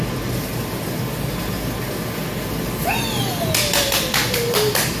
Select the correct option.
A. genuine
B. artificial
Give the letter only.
A